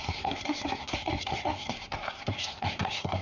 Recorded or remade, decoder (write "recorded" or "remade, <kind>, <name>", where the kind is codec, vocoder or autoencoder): remade, codec, SNAC